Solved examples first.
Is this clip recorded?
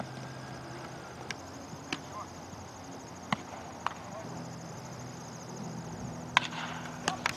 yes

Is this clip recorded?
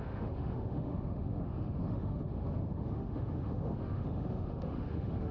no